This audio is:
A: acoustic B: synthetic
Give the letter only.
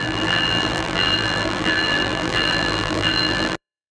B